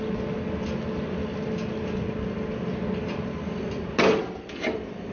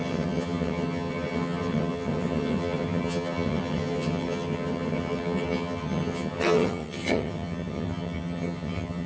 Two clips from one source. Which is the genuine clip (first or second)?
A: first